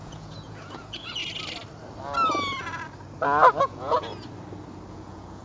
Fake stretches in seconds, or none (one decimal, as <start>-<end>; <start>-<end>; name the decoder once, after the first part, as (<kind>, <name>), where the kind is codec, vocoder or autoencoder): 0.0-1.2 (vocoder, Vocos); 3.6-4.1; 4.9-5.4